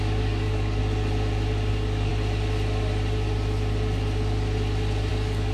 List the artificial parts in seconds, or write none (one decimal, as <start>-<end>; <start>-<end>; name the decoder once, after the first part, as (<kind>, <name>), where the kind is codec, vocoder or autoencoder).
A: 0.0-0.8 (codec, DAC); 1.7-2.1; 5.1-5.5